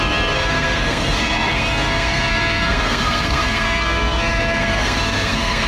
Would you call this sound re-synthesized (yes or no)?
yes